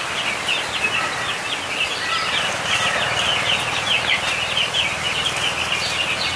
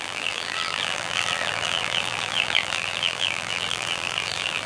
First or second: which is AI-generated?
second